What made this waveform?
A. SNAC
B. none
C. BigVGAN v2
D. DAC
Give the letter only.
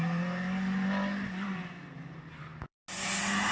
B